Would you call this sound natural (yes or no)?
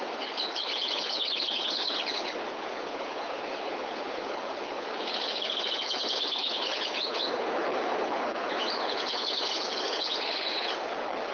no